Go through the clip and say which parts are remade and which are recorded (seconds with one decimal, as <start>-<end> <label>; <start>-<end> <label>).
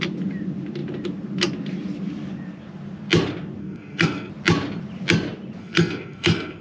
0.0-3.6 recorded; 3.6-4.3 remade; 4.3-5.6 recorded; 5.6-6.6 remade